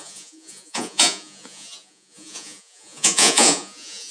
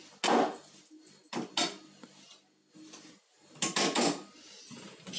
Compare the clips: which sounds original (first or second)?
second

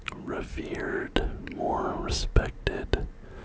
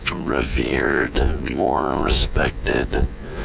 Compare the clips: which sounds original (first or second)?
first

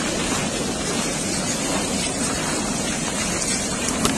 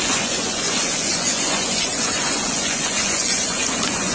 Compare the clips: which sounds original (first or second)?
first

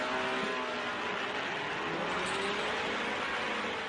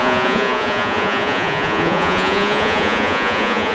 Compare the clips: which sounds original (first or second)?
first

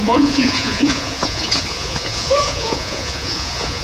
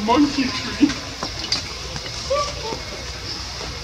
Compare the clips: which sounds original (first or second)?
second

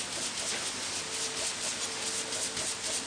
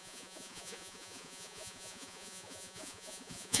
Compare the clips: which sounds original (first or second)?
first